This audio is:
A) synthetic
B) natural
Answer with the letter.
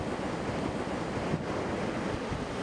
B